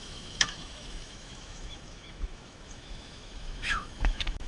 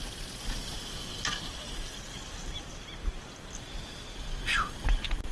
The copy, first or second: first